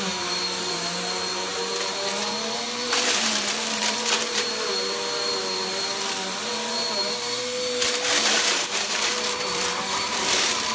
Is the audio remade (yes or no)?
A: yes